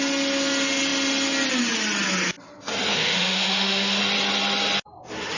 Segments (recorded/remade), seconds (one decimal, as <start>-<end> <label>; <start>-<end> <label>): 0.0-2.9 recorded; 2.9-4.0 remade; 4.0-5.4 recorded